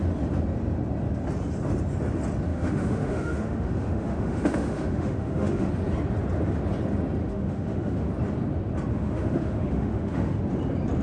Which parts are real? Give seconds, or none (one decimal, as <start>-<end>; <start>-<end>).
0.0-2.5; 5.7-7.2; 8.1-8.9; 10.4-11.0